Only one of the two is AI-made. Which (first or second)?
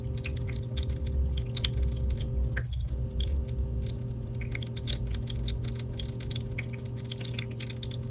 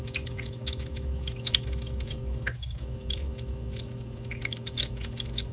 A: second